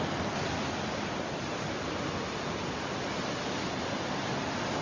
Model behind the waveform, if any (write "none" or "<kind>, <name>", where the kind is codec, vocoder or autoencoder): none